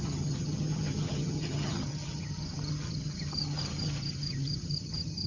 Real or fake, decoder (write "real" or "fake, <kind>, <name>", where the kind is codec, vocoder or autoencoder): fake, vocoder, HiFi-GAN